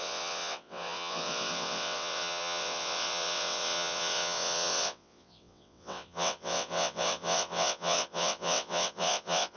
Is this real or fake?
fake